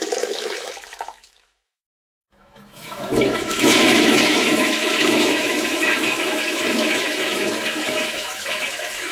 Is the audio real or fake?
fake